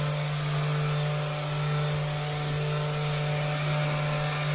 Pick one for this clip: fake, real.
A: real